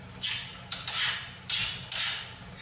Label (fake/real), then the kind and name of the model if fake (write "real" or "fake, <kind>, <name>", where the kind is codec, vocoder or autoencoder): real